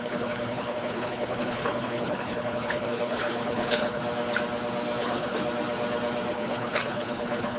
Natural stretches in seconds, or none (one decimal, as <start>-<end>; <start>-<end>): 4.0-5.0; 5.4-6.3